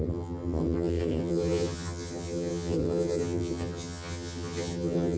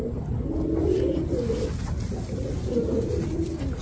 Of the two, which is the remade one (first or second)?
first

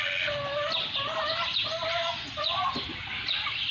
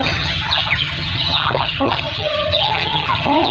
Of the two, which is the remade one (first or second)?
second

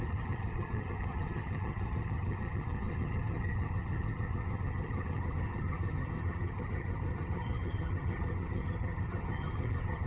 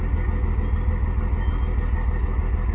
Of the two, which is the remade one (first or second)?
first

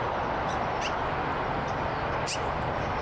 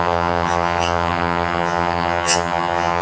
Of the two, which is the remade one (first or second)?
second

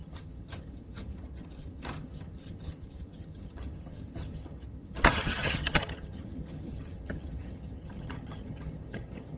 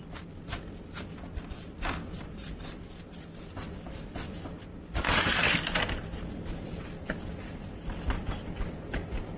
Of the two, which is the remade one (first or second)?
first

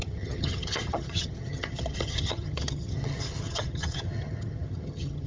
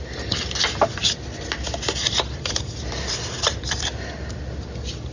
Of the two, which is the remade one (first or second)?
first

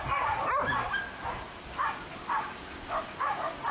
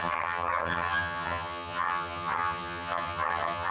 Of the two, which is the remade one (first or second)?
second